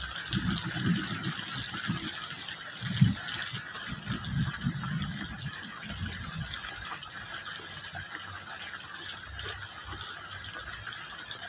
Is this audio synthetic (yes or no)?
no